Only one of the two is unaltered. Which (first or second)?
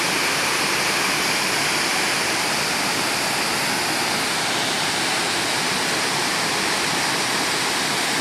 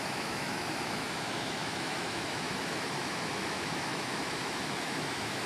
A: first